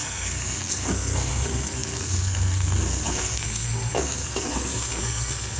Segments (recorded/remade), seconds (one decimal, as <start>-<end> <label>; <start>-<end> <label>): 0.0-5.6 remade